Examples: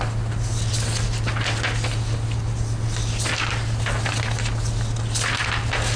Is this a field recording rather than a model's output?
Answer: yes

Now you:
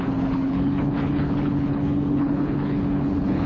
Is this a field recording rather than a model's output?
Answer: no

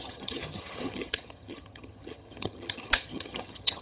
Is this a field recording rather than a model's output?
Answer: no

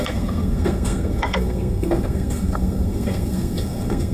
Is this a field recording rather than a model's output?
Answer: no